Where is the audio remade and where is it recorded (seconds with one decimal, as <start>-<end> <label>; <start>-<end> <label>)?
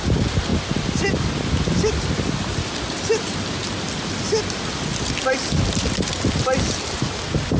0.0-7.6 recorded